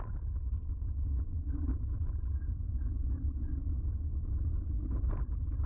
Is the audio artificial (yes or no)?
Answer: yes